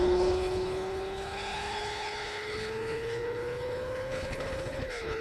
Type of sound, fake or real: fake